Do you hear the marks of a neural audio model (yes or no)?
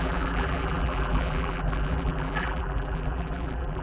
yes